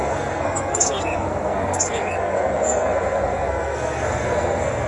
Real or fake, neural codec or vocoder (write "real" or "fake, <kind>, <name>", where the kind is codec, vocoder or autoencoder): fake, codec, SNAC